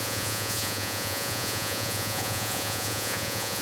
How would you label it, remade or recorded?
remade